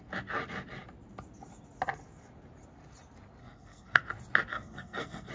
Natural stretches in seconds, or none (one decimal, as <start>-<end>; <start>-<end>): 0.0-3.4; 4.0-4.5